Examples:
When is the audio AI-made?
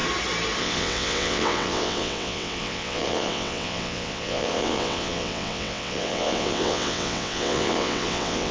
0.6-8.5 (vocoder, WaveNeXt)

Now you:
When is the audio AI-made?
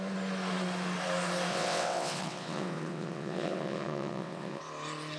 1.5-4.6 (vocoder, WaveNeXt)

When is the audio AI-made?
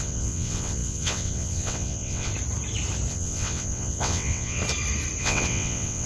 0.0-2.3 (vocoder, WaveNeXt); 3.1-4.6; 5.2-6.1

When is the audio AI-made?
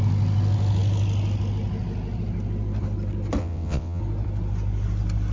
3.4-4.0 (vocoder, WaveNeXt)